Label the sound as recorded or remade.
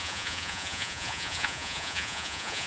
remade